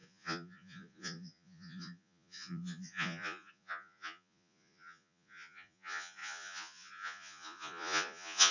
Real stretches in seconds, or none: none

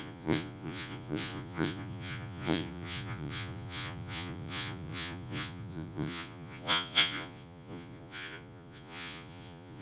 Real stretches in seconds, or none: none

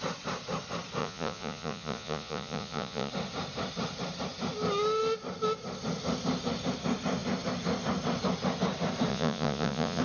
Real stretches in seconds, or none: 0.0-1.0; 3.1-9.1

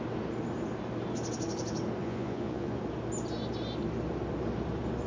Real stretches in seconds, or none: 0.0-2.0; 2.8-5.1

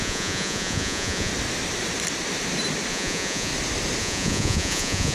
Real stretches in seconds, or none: 1.3-2.9; 3.5-4.0

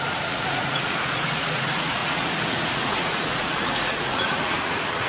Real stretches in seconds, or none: none